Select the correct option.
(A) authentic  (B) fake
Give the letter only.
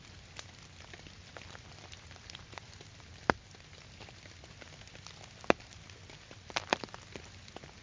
A